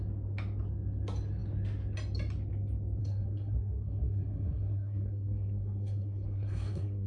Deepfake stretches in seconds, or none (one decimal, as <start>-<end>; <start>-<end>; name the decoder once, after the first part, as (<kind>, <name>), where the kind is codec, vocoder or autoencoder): 3.0-7.1 (codec, SNAC)